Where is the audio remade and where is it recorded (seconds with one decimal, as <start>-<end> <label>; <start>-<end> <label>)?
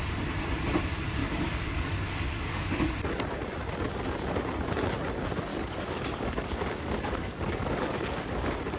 0.0-1.2 recorded; 1.2-2.9 remade; 2.9-5.5 recorded; 5.5-8.3 remade; 8.3-8.8 recorded